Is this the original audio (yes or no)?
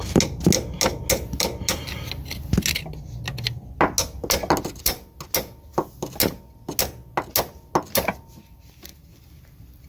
yes